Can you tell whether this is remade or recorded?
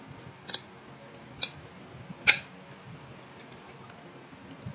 recorded